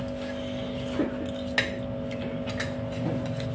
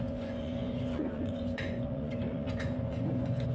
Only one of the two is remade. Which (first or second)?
second